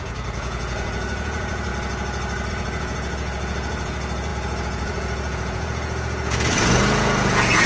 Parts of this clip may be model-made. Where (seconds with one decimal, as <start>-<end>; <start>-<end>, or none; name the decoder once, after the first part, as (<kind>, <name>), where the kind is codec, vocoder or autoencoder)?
0.0-1.7 (vocoder, Vocos); 2.5-7.7